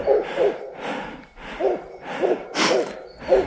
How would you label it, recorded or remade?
recorded